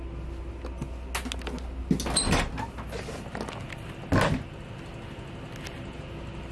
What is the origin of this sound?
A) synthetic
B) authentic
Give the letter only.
B